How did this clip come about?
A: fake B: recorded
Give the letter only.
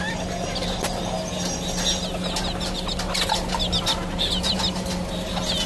B